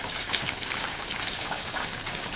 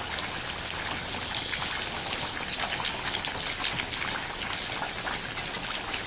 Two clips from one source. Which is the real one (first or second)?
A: second